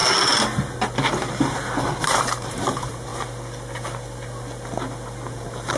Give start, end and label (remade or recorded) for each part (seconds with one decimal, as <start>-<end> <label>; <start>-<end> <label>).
0.0-2.0 recorded; 2.0-3.1 remade; 3.1-5.3 recorded; 5.3-5.8 remade